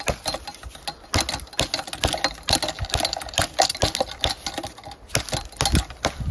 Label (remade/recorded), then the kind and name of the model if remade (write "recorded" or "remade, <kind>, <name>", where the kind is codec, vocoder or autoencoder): recorded